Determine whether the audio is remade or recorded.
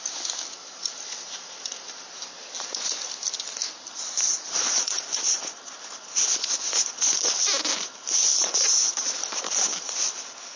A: recorded